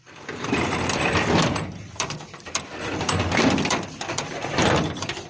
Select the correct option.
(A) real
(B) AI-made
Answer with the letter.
B